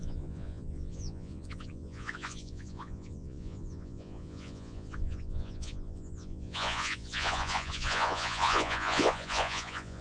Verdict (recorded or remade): remade